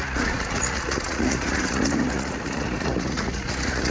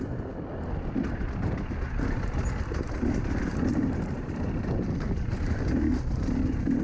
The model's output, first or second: first